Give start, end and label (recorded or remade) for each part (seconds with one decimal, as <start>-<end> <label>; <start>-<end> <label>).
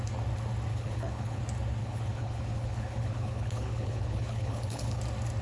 0.0-0.7 recorded; 0.7-1.4 remade; 1.4-1.8 recorded; 1.8-5.0 remade; 5.0-5.4 recorded